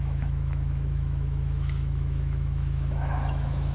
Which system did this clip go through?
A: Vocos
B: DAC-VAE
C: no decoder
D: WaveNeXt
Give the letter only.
B